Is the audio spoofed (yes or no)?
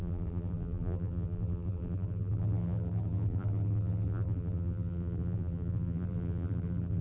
yes